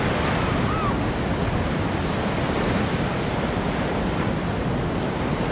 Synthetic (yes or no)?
no